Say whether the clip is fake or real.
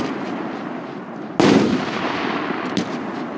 real